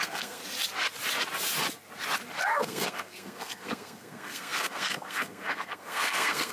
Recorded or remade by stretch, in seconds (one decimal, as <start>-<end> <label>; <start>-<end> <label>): 0.0-0.4 remade; 0.4-2.4 recorded; 2.4-6.5 remade